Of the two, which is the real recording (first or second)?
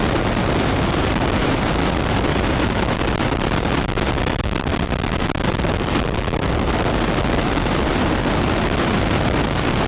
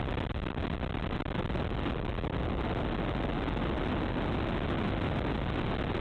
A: second